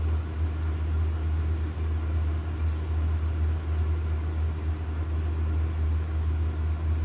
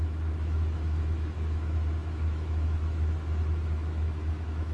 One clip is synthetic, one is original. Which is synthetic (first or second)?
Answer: second